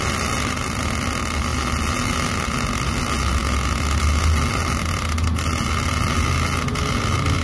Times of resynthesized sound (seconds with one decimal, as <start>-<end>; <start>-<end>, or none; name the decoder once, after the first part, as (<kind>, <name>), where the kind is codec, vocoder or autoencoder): none